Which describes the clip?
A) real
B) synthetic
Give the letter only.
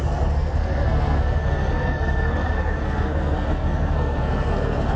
B